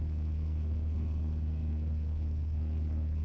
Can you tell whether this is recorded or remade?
remade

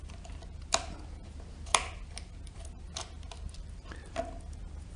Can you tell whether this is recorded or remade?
recorded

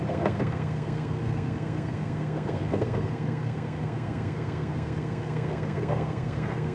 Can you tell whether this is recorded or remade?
remade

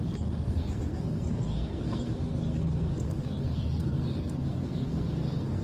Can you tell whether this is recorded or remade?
remade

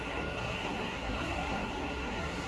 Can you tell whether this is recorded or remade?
remade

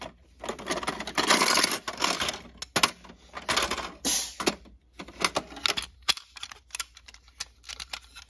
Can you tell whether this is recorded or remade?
recorded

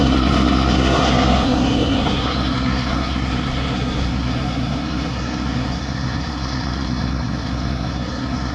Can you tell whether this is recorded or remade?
remade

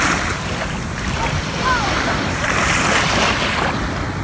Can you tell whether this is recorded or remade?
recorded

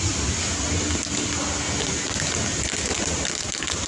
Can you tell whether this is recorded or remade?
recorded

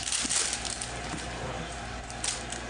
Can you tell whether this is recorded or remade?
recorded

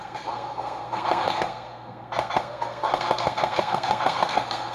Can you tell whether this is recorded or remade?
remade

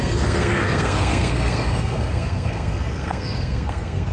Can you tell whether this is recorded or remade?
remade